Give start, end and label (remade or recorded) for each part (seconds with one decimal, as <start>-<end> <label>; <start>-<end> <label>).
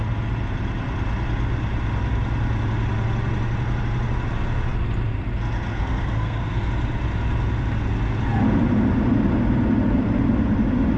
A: 0.0-5.7 recorded; 5.7-6.7 remade; 6.7-11.0 recorded